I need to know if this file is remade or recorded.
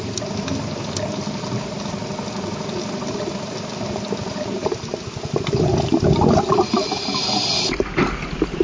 recorded